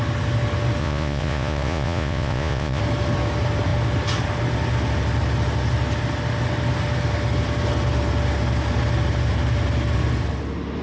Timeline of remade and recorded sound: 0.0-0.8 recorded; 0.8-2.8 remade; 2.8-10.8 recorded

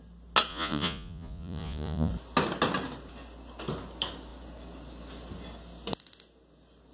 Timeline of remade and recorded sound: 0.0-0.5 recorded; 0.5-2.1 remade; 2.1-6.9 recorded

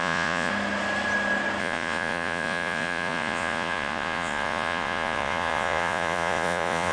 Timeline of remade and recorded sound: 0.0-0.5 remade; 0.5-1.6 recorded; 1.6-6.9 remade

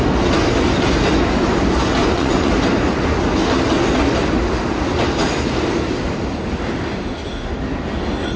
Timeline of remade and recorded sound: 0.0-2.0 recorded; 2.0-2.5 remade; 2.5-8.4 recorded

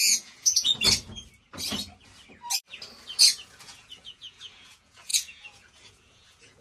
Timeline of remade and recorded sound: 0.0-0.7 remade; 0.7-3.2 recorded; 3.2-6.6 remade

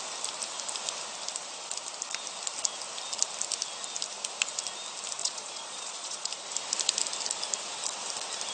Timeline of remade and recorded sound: 0.0-5.2 recorded; 5.2-6.3 remade; 6.3-8.5 recorded

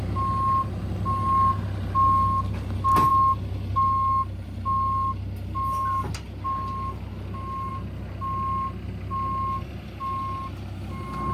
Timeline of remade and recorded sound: 0.0-11.3 recorded

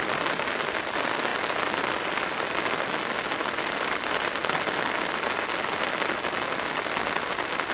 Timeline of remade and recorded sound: 0.0-7.7 recorded